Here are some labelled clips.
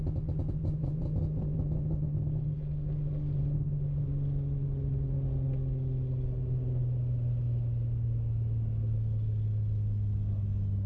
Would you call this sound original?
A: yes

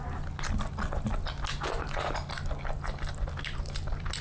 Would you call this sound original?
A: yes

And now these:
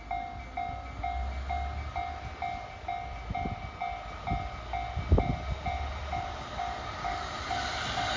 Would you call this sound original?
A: yes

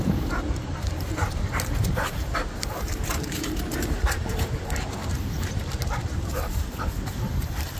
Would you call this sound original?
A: no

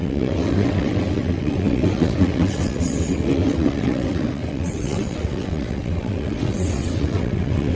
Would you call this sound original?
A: no